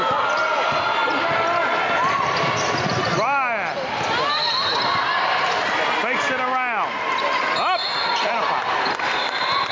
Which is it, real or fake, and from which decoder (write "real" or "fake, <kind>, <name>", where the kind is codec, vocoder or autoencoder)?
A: real